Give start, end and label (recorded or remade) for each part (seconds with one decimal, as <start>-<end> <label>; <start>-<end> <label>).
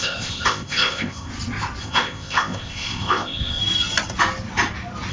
0.0-1.3 remade; 1.3-1.8 recorded; 1.8-3.6 remade; 3.6-5.1 recorded